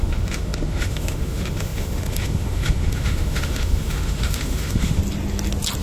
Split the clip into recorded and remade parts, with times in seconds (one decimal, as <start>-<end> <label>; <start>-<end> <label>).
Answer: 0.0-5.0 remade; 5.0-5.8 recorded